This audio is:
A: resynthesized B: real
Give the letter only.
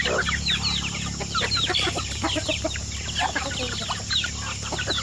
A